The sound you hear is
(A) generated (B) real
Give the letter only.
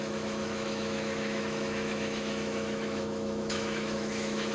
A